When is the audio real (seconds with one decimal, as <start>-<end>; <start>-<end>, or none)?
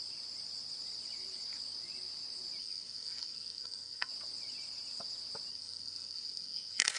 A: 0.0-2.6; 4.1-5.5